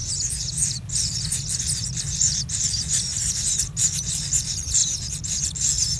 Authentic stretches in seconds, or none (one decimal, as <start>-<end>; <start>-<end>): 0.0-6.0